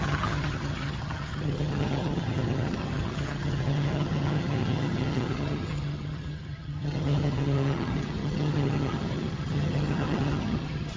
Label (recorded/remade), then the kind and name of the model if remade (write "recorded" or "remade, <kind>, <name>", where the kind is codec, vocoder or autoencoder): remade, vocoder, HiFi-GAN